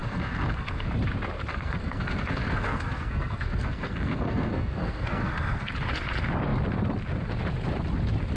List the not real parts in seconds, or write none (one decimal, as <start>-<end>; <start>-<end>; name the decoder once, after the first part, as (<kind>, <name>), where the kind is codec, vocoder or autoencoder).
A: 0.0-0.9 (codec, SNAC); 1.5-5.7